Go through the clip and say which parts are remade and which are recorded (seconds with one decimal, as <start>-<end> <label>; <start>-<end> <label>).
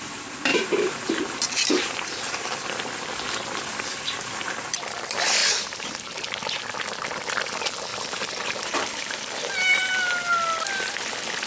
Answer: 0.0-0.5 recorded; 0.5-1.1 remade; 1.1-5.4 recorded; 5.4-6.2 remade; 6.2-7.9 recorded; 7.9-9.2 remade; 9.2-11.5 recorded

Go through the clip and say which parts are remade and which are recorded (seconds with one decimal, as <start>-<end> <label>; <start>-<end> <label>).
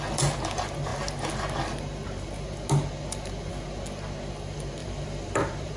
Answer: 0.0-4.8 recorded; 4.8-5.8 remade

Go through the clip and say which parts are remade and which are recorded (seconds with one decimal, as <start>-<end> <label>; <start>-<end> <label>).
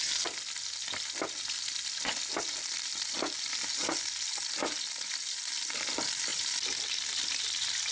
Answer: 0.0-7.9 recorded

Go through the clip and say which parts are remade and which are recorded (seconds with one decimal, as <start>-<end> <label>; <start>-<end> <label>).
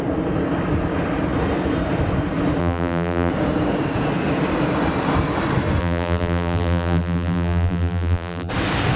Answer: 0.0-2.6 recorded; 2.6-3.3 remade; 3.3-5.8 recorded; 5.8-8.5 remade; 8.5-9.0 recorded